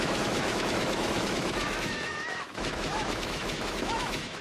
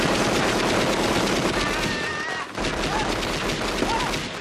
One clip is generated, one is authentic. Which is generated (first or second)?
first